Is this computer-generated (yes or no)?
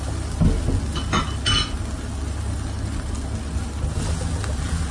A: no